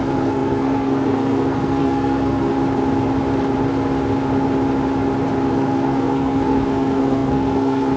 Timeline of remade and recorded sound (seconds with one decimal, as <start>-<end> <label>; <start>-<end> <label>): 0.0-2.5 remade; 2.5-5.5 recorded; 5.5-8.0 remade